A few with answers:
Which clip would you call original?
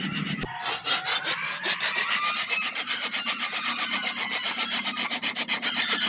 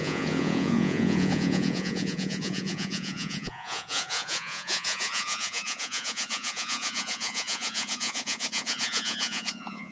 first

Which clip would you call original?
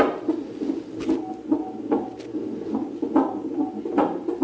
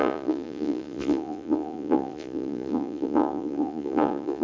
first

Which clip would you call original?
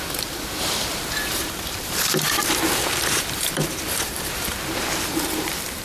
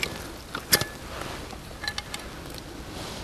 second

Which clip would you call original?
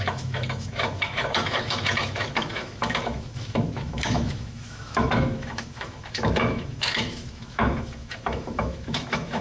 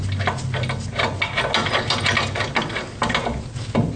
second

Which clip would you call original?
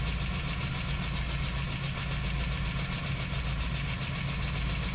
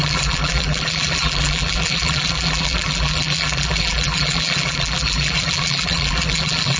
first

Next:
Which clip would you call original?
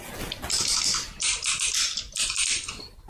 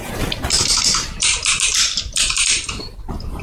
first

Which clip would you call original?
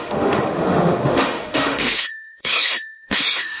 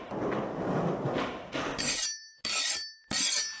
second